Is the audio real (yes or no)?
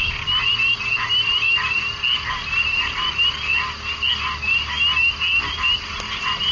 yes